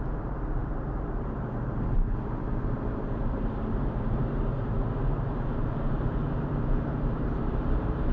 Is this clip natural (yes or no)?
no